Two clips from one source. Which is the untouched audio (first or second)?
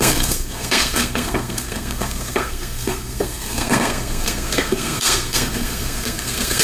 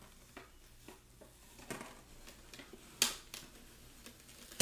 second